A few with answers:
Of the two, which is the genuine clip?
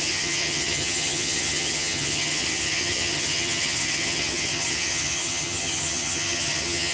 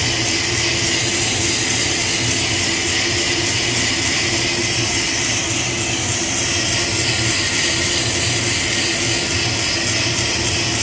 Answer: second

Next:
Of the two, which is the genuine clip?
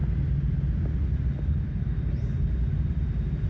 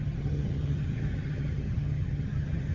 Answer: first